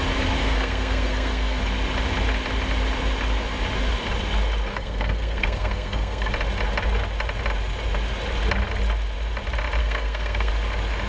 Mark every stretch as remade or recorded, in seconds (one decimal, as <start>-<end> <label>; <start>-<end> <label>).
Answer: 0.0-0.4 recorded; 0.4-1.6 remade; 1.6-4.7 recorded; 4.7-6.3 remade; 6.3-9.8 recorded; 9.8-10.5 remade; 10.5-11.1 recorded